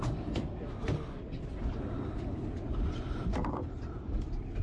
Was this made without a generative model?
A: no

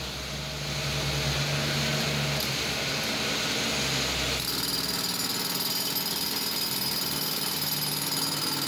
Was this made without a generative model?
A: yes